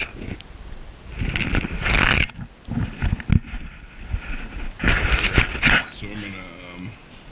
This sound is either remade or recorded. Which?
recorded